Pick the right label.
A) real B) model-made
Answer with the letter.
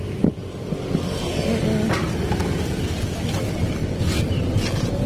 A